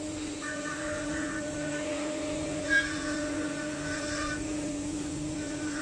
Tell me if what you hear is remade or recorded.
remade